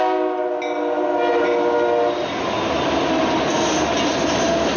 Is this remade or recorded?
recorded